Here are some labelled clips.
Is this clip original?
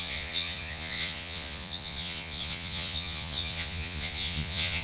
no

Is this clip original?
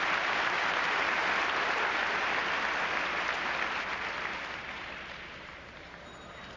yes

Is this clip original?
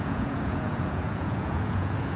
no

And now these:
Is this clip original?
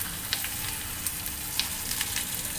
yes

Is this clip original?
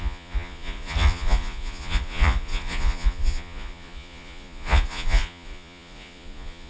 no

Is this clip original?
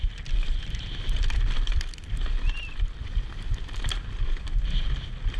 yes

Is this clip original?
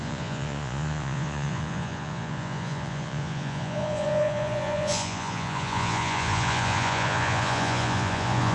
no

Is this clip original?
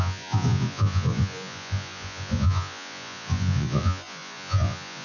no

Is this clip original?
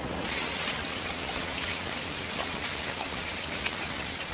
no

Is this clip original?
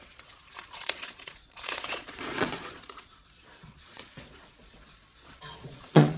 no